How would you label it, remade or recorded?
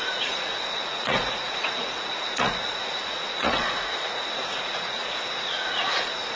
remade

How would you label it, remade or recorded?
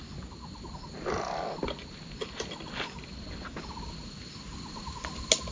recorded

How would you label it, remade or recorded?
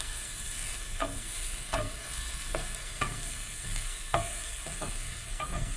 remade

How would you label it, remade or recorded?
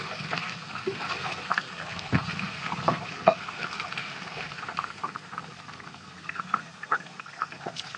remade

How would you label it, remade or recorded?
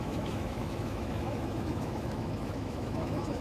remade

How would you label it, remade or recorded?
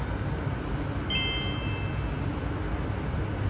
recorded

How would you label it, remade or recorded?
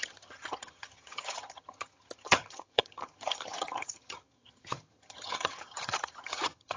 remade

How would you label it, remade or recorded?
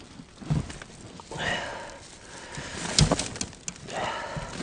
recorded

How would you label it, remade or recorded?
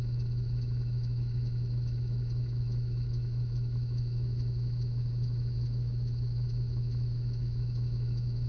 remade